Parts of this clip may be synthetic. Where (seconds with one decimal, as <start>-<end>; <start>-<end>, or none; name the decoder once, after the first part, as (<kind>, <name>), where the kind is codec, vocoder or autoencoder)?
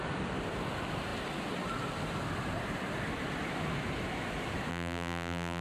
4.7-5.6 (vocoder, BigVGAN v2)